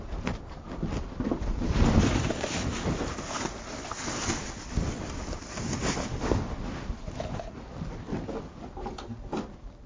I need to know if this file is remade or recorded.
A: recorded